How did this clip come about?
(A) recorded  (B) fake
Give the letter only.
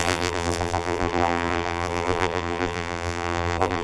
B